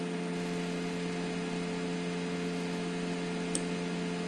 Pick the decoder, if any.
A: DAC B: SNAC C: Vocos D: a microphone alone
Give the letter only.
D